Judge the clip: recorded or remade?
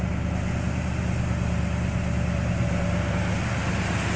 recorded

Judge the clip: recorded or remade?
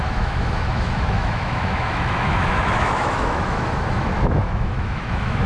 remade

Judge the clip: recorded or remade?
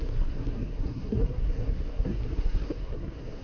remade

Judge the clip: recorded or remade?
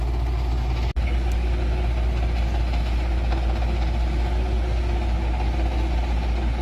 recorded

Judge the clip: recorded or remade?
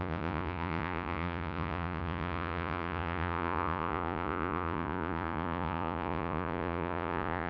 remade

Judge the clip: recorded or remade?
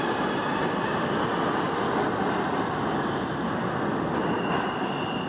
recorded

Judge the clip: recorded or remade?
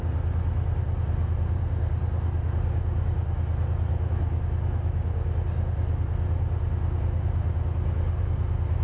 recorded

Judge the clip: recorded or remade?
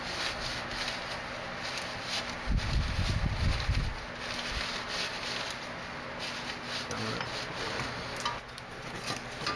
recorded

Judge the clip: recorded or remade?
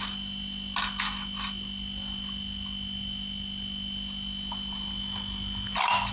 recorded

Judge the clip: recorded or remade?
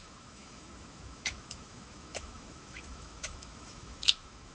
remade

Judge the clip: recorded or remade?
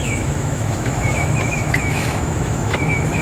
remade